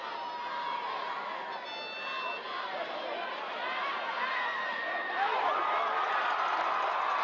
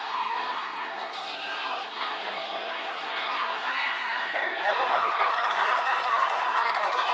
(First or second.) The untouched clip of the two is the first